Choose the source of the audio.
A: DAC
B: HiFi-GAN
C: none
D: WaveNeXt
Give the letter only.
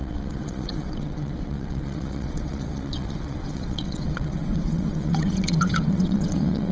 D